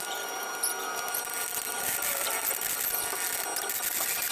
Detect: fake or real real